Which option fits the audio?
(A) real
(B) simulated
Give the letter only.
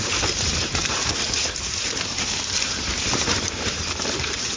B